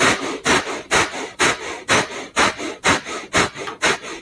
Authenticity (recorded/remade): remade